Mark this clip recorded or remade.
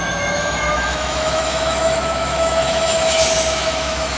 remade